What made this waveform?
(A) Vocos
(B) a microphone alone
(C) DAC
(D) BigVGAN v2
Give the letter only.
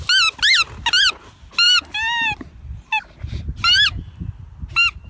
B